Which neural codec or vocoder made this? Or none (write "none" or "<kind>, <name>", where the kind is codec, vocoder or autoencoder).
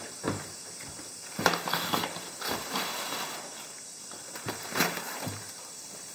vocoder, BigVGAN v2